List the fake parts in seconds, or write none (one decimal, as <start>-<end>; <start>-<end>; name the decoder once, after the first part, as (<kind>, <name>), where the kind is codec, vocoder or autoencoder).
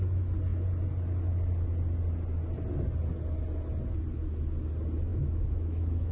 5.1-6.1 (autoencoder, DAC-VAE)